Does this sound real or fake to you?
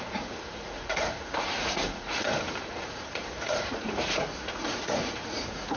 fake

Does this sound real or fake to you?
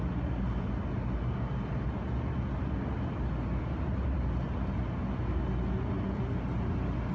real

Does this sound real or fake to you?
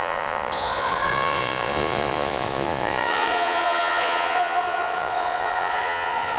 fake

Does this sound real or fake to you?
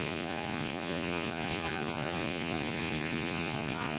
fake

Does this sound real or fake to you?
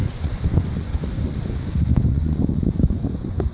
fake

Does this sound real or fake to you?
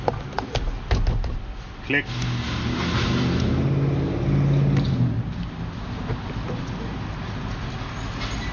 real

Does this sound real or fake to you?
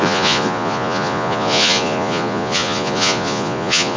fake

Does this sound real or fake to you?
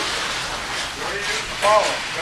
real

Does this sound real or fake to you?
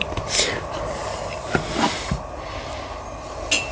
real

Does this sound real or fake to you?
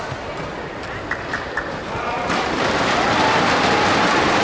real